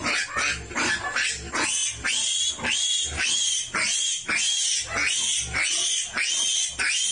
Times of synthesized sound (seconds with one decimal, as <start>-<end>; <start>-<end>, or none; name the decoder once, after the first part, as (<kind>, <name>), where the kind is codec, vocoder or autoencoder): none